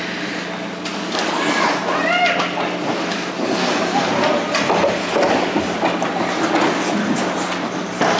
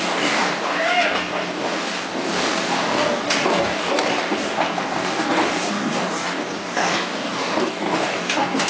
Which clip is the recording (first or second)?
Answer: first